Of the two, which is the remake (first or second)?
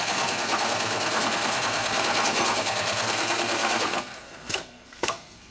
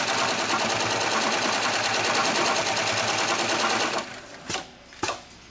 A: first